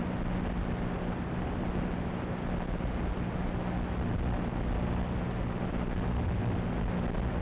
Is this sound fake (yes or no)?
no